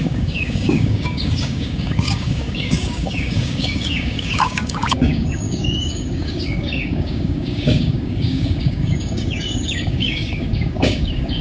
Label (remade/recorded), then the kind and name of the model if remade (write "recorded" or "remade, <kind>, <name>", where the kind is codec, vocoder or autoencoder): remade, codec, DAC